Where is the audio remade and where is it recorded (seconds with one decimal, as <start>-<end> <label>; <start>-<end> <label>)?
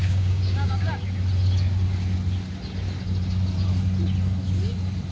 0.0-0.9 remade; 0.9-5.1 recorded